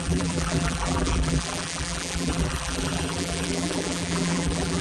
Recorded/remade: remade